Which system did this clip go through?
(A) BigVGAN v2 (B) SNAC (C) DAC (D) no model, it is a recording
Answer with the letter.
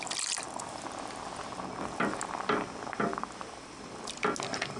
D